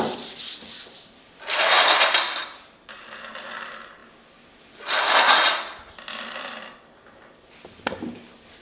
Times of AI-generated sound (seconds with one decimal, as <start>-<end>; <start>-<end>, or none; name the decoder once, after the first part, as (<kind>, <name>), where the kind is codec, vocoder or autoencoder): 2.4-3.3 (vocoder, BigVGAN v2)